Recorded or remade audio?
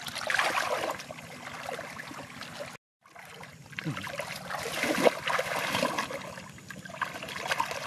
recorded